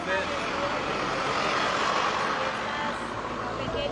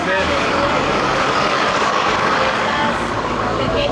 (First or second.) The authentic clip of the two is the first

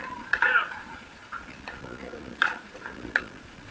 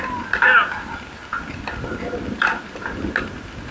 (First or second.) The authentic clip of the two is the second